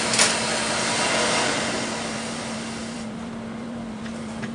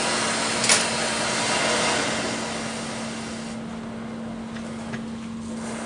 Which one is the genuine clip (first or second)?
second